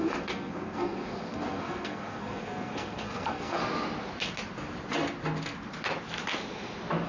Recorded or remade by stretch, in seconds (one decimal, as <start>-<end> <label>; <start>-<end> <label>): 0.0-3.6 remade; 3.6-7.1 recorded